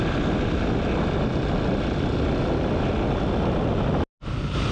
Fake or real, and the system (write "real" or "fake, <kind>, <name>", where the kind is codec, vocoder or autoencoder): real